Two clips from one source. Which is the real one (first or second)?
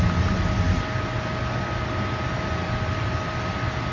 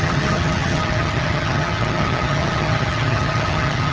first